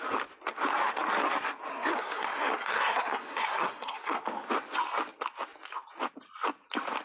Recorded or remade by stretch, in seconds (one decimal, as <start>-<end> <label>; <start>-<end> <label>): 0.0-1.7 recorded; 1.7-4.2 remade; 4.2-7.0 recorded